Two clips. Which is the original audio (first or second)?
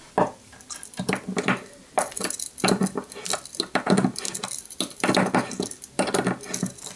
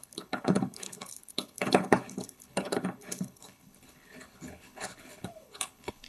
first